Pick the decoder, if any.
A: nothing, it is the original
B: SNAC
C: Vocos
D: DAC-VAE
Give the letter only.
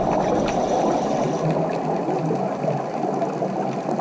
A